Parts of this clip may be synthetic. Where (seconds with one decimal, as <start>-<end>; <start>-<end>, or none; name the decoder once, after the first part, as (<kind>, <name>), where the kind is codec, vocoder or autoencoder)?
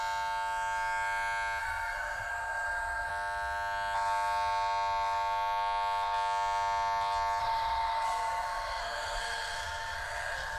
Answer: 1.6-3.1 (codec, SNAC); 7.4-10.6